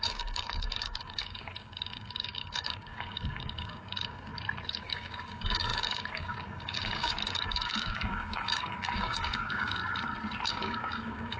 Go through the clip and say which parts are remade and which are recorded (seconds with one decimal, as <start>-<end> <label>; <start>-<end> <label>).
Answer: 0.0-4.3 remade; 4.3-4.8 recorded; 4.8-9.8 remade; 9.8-10.5 recorded; 10.5-11.4 remade